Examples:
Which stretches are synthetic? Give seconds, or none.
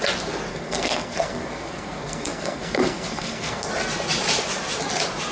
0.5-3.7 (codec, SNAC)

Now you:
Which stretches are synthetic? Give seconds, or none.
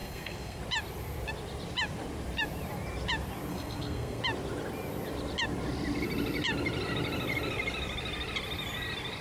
0.0-0.6 (codec, SNAC); 3.5-4.2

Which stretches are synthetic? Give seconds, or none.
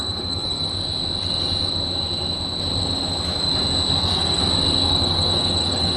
0.0-0.7 (codec, SNAC); 4.0-4.4; 4.9-6.0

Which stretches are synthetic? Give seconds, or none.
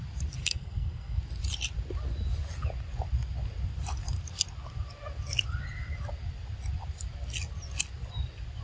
0.4-1.2 (codec, SNAC)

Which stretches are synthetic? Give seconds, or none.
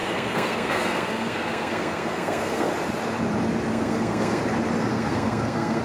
0.0-2.7 (codec, SNAC); 3.7-4.4; 4.9-5.8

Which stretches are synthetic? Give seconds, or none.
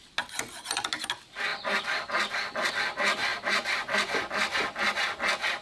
none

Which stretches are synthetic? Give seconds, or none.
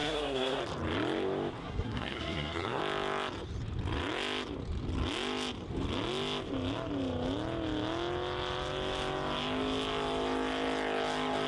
0.0-0.6 (codec, SNAC); 1.6-2.8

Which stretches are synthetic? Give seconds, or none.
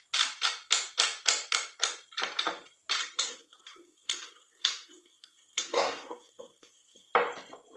3.0-7.1 (codec, SNAC)